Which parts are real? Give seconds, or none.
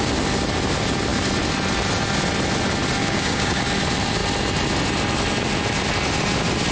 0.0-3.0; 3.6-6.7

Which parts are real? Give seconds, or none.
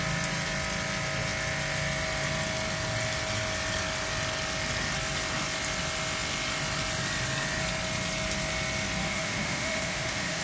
0.0-9.0